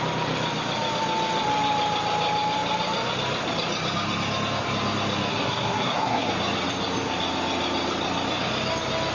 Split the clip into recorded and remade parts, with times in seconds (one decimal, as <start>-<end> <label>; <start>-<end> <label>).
0.0-5.3 recorded; 5.3-6.3 remade; 6.3-9.1 recorded